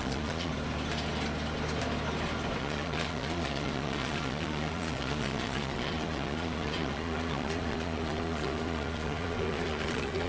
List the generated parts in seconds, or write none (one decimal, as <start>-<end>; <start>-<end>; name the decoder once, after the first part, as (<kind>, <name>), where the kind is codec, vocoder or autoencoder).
0.0-0.5 (vocoder, Vocos); 2.6-10.3